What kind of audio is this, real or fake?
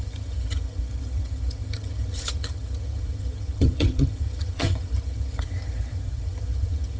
fake